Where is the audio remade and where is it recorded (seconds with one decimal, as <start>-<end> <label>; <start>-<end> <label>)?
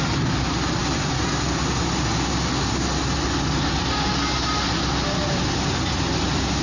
0.0-6.6 recorded